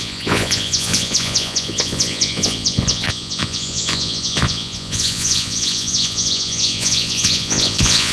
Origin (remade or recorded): remade